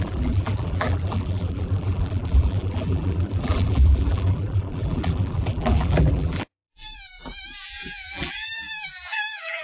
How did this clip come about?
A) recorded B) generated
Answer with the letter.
B